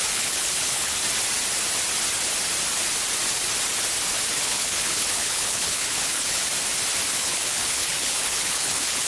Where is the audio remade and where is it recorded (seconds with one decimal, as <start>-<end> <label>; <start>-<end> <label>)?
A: 0.0-1.0 remade; 1.0-4.4 recorded; 4.4-6.4 remade; 6.4-7.1 recorded; 7.1-9.1 remade

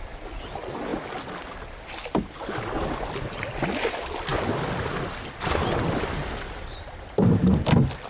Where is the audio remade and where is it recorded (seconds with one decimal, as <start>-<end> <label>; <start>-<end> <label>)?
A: 0.0-8.1 recorded

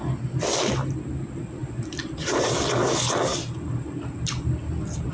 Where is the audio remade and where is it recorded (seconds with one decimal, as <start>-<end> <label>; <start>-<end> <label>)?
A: 0.0-1.6 recorded; 1.6-2.5 remade; 2.5-3.3 recorded; 3.3-4.0 remade; 4.0-5.1 recorded